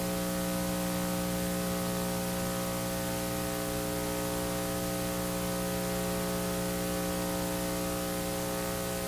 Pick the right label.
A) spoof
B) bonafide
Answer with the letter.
B